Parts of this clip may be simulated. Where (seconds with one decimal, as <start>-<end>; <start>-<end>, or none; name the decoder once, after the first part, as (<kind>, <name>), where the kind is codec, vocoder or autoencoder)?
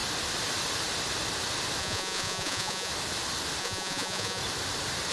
1.8-2.9 (vocoder, Vocos); 3.6-4.4